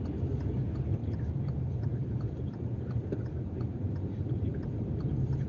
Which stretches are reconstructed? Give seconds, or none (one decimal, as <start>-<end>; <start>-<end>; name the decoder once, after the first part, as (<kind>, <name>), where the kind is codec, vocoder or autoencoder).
1.0-4.3 (vocoder, BigVGAN v2)